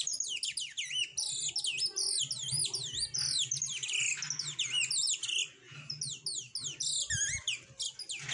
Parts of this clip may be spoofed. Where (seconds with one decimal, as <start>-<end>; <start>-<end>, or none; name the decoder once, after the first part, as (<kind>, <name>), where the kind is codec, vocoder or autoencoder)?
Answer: none

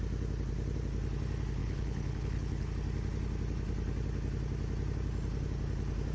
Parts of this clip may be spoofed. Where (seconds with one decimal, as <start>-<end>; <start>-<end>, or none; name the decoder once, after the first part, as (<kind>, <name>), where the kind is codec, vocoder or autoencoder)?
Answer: 1.6-2.7 (codec, HILCodec)

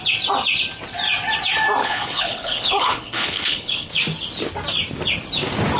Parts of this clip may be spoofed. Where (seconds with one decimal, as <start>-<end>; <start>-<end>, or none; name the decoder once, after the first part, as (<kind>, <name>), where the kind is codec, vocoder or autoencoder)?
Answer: 1.8-3.9 (codec, HILCodec)

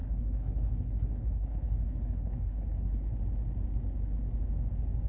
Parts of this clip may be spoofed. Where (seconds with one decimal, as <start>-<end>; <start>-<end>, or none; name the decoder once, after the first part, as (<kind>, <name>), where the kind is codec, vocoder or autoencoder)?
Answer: 0.0-3.1 (codec, HILCodec)